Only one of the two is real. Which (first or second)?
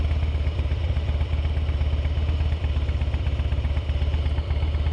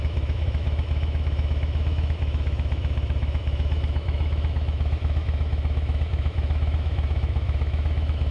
first